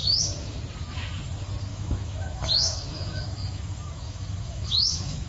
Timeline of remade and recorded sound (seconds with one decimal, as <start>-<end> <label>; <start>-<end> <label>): 0.0-0.6 remade; 0.6-1.7 recorded; 1.7-5.3 remade